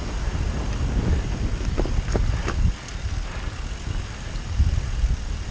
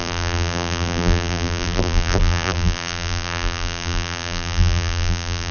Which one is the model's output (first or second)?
second